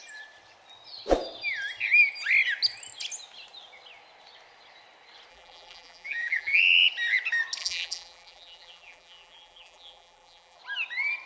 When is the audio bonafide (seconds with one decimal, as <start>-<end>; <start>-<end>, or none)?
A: 0.0-5.3; 6.6-7.6; 10.6-11.3